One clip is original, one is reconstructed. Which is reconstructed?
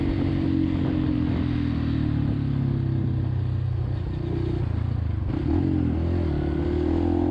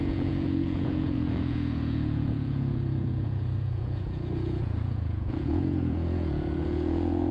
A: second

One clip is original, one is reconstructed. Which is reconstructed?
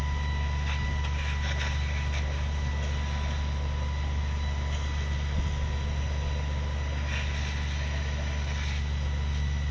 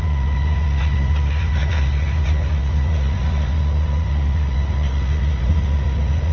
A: second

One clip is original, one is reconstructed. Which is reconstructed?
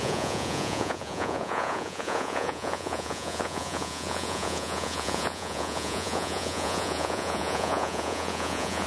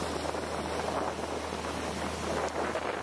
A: first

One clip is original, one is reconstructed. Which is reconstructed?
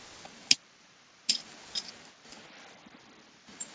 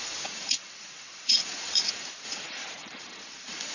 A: second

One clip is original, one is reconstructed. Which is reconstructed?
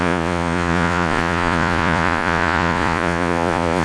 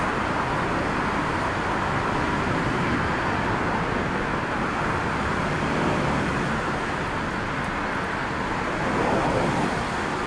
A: first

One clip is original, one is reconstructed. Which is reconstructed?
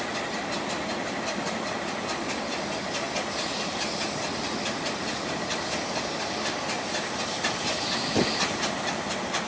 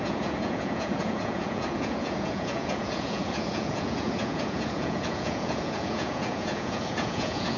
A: second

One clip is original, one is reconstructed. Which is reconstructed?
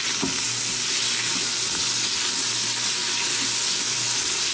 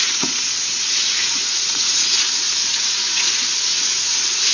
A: second